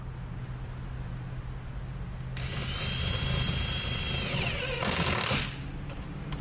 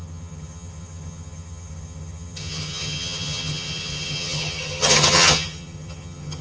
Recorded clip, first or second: first